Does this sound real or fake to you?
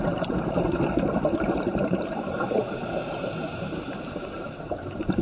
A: fake